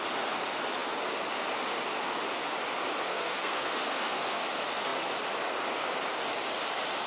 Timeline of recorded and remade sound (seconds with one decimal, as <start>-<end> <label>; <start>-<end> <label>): 0.0-3.1 recorded; 3.1-4.4 remade; 4.4-7.1 recorded